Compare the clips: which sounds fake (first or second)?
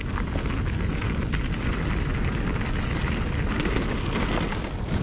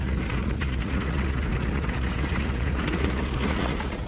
second